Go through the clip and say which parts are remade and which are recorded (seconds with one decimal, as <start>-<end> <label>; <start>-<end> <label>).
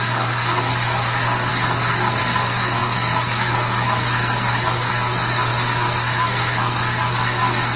0.0-7.8 remade